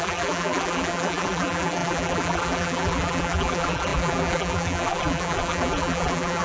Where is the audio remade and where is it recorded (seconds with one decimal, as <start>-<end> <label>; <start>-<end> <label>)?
0.0-6.4 remade